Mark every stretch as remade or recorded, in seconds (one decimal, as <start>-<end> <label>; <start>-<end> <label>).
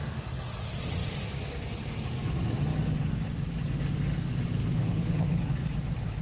0.0-4.6 recorded; 4.6-5.4 remade; 5.4-6.2 recorded